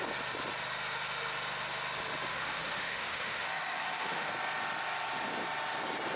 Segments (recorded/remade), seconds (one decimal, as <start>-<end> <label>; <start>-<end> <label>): 0.0-2.3 recorded; 2.3-4.3 remade; 4.3-6.2 recorded